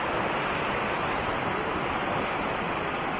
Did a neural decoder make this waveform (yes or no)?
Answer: no